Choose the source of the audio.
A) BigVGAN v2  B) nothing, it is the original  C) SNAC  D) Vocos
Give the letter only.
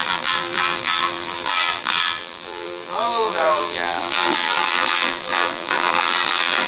A